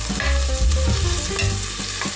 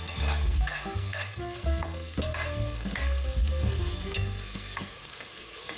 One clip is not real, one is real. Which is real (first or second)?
first